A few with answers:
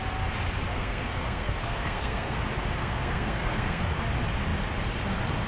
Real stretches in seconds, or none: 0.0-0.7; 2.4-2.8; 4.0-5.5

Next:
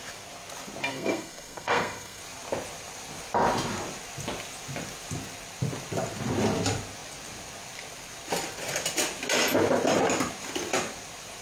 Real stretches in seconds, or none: 0.0-0.9; 2.2-11.4